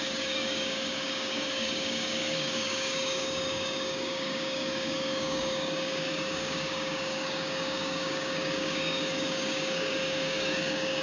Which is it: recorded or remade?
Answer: remade